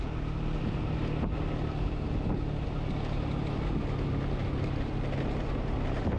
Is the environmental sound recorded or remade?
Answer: recorded